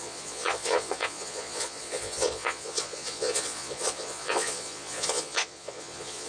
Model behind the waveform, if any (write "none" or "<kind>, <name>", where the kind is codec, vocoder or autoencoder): vocoder, Vocos